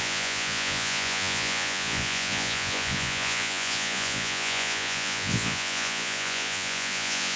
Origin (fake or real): fake